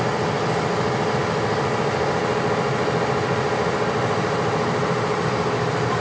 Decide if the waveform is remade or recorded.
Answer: recorded